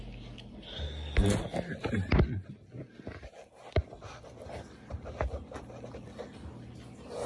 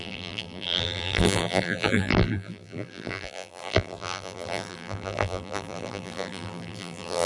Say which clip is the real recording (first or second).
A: first